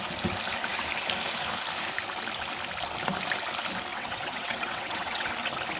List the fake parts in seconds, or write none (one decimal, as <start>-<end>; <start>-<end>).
3.9-5.3

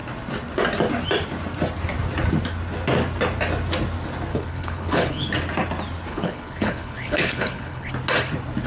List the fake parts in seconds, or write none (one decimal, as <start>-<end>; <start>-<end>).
4.3-5.3; 6.1-7.9